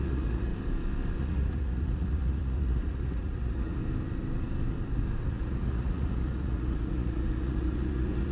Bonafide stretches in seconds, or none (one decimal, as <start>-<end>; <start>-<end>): 0.5-1.2; 3.8-5.3